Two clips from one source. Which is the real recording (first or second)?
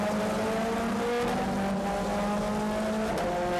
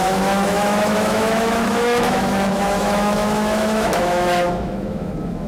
first